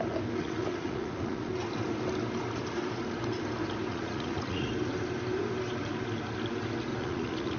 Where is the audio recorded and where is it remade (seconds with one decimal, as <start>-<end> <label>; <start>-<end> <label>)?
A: 0.0-0.4 recorded; 0.4-1.5 remade; 1.5-3.9 recorded; 3.9-4.7 remade; 4.7-6.9 recorded; 6.9-7.6 remade